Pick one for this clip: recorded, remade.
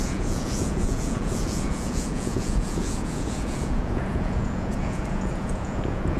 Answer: remade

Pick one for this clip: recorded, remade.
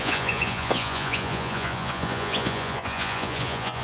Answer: remade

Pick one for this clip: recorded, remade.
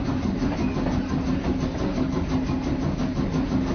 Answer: recorded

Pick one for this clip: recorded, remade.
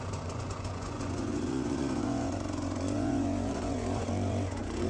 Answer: remade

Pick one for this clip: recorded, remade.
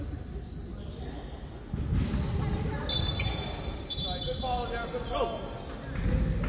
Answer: recorded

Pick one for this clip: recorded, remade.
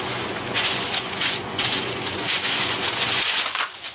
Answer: remade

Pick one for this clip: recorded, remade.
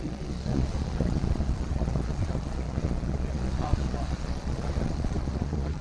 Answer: remade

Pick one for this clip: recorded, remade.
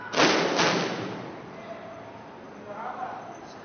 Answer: recorded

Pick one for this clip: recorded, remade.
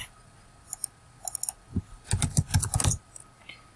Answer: recorded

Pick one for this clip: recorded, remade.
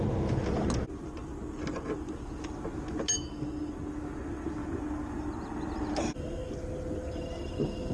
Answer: recorded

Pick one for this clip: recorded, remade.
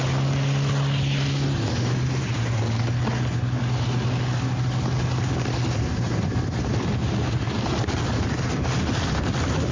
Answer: recorded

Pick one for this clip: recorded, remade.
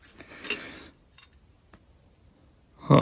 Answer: recorded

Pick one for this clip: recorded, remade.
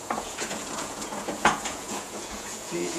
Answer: remade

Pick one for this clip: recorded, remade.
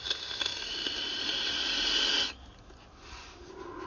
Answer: recorded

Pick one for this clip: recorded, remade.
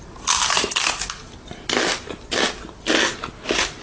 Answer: recorded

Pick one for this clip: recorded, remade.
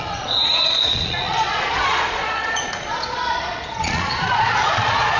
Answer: remade